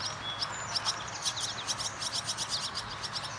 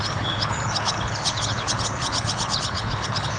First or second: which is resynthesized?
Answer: second